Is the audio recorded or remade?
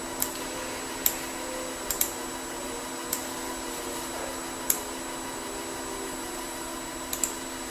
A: recorded